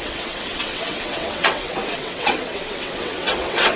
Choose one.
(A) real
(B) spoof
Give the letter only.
B